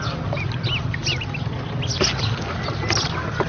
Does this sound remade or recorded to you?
recorded